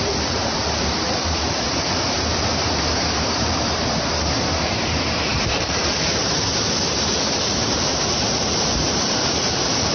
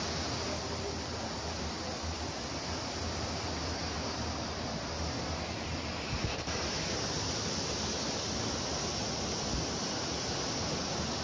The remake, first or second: first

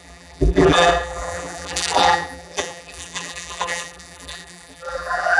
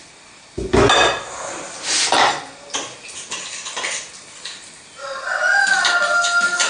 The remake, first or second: first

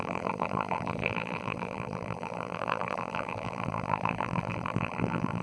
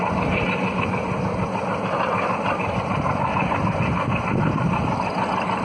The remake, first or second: first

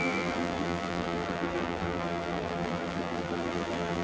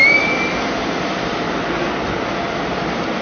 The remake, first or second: first